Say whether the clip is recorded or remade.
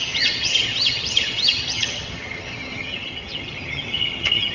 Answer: remade